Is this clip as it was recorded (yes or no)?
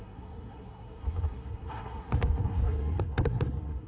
no